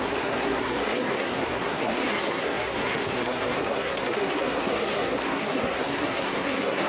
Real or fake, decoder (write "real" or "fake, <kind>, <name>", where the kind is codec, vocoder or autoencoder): fake, codec, SNAC